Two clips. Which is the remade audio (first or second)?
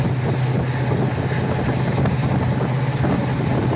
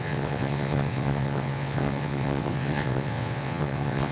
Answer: second